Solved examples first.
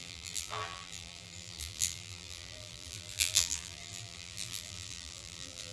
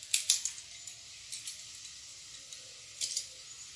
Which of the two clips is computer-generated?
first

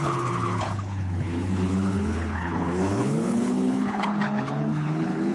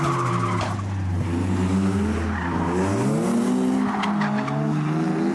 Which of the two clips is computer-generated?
first